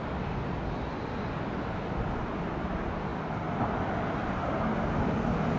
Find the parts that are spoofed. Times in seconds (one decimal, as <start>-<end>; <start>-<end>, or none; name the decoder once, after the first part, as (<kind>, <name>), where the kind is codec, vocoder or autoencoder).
none